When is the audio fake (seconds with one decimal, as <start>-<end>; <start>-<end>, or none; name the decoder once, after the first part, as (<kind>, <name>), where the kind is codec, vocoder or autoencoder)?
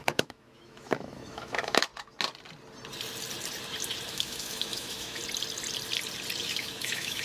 0.0-1.9 (autoencoder, DAC-VAE); 4.1-5.2; 6.4-7.2